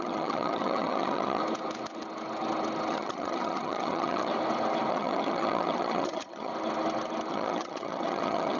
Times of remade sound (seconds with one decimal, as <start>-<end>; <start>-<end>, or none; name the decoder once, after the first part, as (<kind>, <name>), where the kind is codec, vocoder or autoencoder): 0.0-1.4 (vocoder, HiFi-GAN); 2.9-4.3; 4.9-6.5; 7.3-8.6